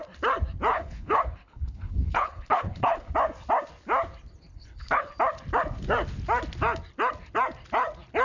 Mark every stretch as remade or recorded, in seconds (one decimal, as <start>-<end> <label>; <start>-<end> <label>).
0.0-0.7 recorded; 0.7-3.1 remade; 3.1-4.5 recorded; 4.5-5.1 remade; 5.1-8.2 recorded